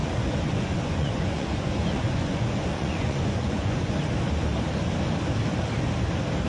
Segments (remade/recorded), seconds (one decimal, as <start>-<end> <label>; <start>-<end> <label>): 0.0-3.9 remade; 3.9-6.5 recorded